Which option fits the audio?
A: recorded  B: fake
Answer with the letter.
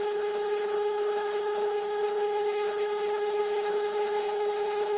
B